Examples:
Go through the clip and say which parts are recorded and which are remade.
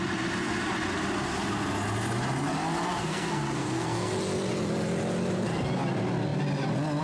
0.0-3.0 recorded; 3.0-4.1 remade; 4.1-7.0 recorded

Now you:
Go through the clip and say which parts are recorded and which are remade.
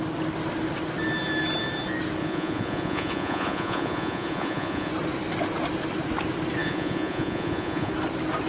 0.0-2.2 recorded; 2.2-4.9 remade; 4.9-6.6 recorded; 6.6-7.9 remade; 7.9-8.5 recorded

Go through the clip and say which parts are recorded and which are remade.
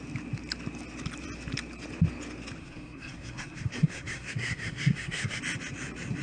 0.0-2.6 recorded; 2.6-5.4 remade; 5.4-6.2 recorded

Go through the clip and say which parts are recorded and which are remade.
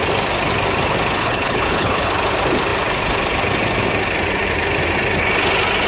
0.0-1.2 recorded; 1.2-2.1 remade; 2.1-5.9 recorded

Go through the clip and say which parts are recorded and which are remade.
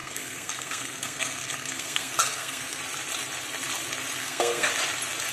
0.0-2.8 remade; 2.8-4.2 recorded; 4.2-4.7 remade; 4.7-5.3 recorded